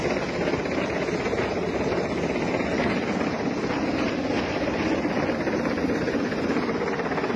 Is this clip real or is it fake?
real